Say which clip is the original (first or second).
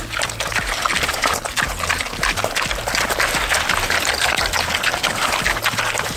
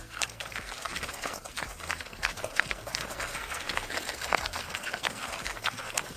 first